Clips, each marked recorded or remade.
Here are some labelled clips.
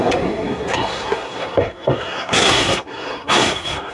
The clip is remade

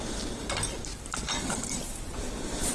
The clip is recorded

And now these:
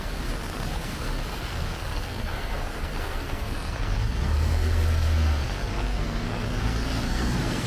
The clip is remade